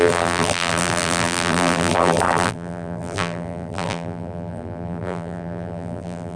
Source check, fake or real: fake